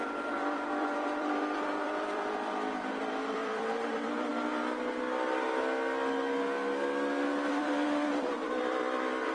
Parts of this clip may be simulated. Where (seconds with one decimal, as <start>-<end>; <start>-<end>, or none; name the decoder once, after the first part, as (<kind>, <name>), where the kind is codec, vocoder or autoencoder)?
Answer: 0.0-4.3 (vocoder, BigVGAN v2); 7.5-9.3